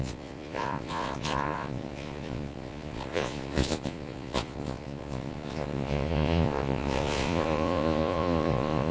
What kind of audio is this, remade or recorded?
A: remade